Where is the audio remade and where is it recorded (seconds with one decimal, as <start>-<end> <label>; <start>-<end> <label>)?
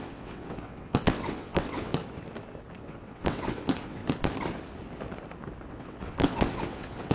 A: 0.0-1.9 remade; 1.9-2.8 recorded; 2.8-4.0 remade; 4.0-5.7 recorded; 5.7-7.1 remade